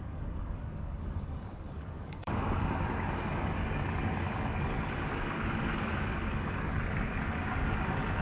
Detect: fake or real fake